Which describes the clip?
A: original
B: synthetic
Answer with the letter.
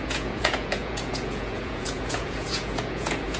B